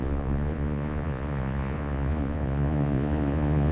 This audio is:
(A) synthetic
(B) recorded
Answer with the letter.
A